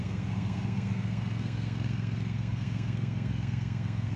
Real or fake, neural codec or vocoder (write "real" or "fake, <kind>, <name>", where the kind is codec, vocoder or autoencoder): fake, codec, SNAC